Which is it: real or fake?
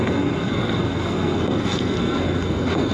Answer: fake